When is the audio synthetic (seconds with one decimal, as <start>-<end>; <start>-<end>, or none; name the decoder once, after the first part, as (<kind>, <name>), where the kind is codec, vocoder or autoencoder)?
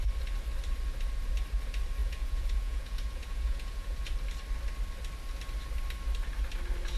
2.0-4.0 (vocoder, Vocos)